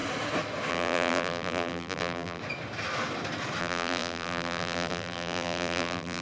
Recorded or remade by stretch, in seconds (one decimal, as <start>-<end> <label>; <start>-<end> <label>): 0.0-0.7 recorded; 0.7-2.4 remade; 2.4-3.6 recorded; 3.6-6.2 remade